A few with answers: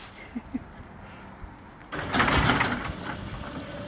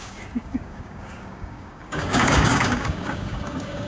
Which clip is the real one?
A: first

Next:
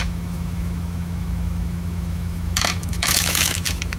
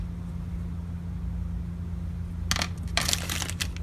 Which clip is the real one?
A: second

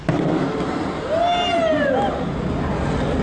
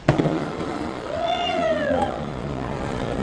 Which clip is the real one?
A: first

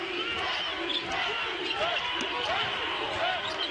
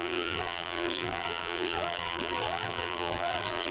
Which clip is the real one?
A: first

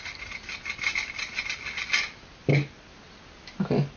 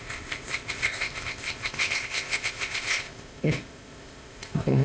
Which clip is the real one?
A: first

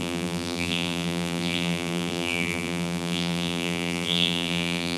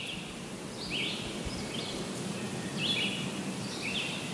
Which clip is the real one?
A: second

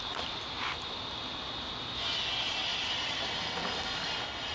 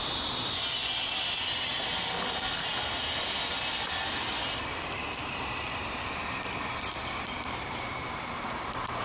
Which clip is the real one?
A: first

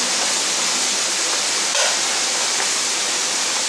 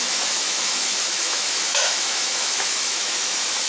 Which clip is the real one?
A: first